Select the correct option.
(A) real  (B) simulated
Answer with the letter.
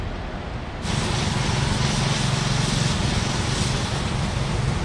A